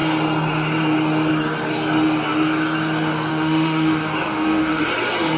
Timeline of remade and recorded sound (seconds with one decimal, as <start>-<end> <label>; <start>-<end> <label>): 0.0-3.3 recorded; 3.3-4.8 remade; 4.8-5.4 recorded